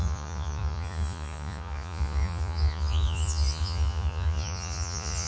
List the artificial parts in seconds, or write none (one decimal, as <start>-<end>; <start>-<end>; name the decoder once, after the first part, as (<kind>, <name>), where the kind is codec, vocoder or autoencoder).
0.0-5.3 (vocoder, Vocos)